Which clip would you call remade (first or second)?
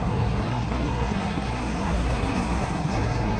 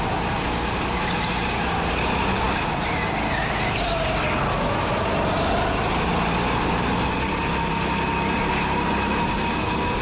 first